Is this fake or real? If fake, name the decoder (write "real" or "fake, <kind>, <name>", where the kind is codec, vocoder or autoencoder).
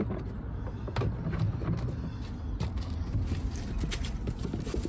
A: real